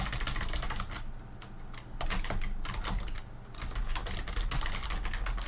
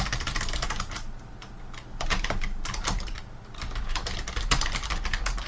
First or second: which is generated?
second